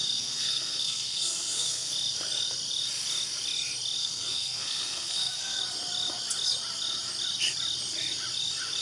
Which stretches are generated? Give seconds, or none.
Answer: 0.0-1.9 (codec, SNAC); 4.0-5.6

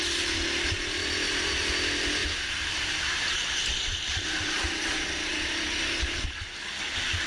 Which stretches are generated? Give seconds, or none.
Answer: 2.2-6.6 (vocoder, BigVGAN v2)

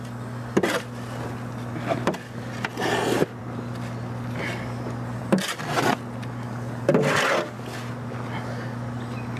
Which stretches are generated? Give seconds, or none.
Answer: none